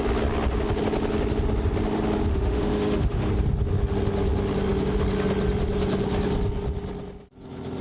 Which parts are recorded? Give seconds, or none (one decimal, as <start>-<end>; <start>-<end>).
0.0-2.3; 3.3-7.8